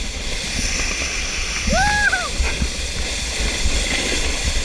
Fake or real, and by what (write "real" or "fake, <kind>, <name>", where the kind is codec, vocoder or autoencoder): real